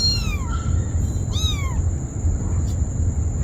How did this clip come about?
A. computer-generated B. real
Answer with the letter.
B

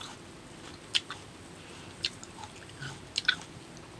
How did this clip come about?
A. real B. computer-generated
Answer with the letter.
A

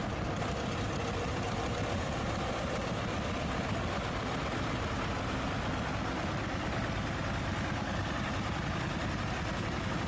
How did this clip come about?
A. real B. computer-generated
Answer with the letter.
A